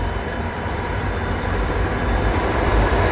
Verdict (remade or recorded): remade